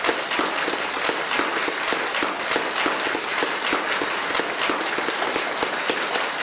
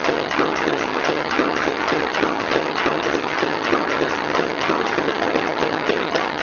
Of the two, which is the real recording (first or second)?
first